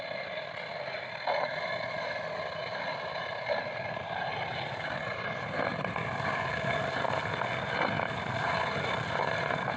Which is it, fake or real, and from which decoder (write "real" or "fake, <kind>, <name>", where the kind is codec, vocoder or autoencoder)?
real